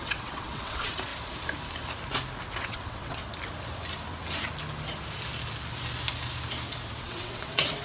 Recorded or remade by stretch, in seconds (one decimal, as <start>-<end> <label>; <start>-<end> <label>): 0.0-1.1 remade; 1.1-2.6 recorded; 2.6-3.2 remade; 3.2-7.0 recorded; 7.0-7.8 remade